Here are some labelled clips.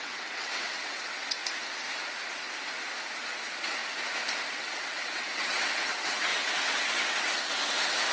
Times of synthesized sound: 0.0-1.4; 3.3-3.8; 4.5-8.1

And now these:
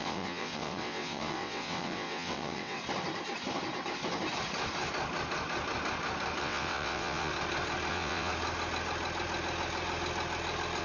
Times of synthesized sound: 0.0-2.8; 6.4-7.3; 7.9-8.3

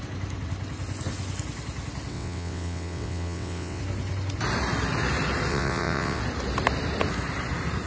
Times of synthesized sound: 2.1-3.8; 5.5-6.2